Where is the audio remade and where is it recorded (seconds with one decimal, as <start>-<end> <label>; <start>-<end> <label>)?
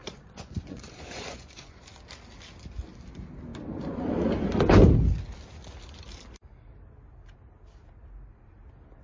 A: 0.0-1.9 remade; 1.9-9.0 recorded